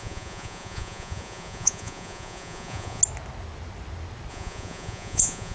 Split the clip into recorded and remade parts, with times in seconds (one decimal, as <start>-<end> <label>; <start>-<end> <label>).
0.0-3.0 remade; 3.0-4.3 recorded; 4.3-5.5 remade